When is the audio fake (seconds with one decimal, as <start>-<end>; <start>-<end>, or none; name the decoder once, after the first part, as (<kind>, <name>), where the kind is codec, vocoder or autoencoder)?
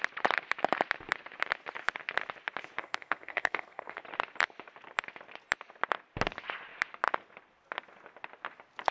2.8-4.0 (codec, SNAC)